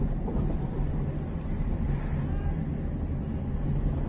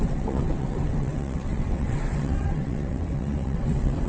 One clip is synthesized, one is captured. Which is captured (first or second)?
first